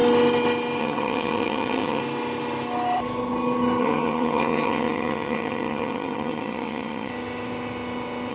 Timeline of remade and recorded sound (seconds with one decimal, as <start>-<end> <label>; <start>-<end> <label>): 0.0-0.8 recorded; 0.8-2.0 remade; 2.0-3.8 recorded; 3.8-7.1 remade; 7.1-8.3 recorded